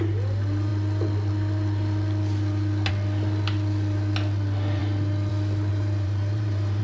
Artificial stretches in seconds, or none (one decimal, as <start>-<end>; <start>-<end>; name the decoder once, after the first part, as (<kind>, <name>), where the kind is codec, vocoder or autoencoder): 5.7-6.8 (vocoder, BigVGAN v2)